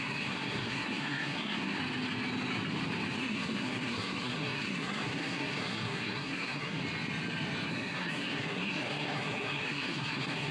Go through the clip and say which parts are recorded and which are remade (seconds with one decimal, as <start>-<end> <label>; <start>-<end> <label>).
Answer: 0.0-1.8 remade; 1.8-3.2 recorded; 3.2-6.8 remade; 6.8-7.7 recorded; 7.7-10.5 remade